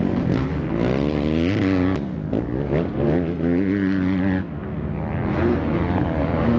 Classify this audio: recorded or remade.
recorded